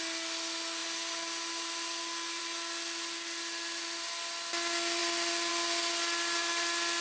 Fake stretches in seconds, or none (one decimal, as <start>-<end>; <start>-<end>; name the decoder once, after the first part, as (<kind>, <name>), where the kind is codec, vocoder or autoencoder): none